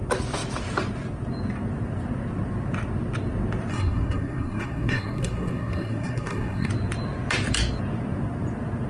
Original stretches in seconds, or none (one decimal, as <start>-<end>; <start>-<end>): 0.0-3.7; 6.7-8.9